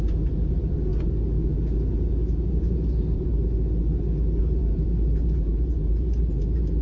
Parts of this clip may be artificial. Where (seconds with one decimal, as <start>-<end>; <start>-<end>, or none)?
0.0-0.9; 2.5-3.3; 4.4-6.8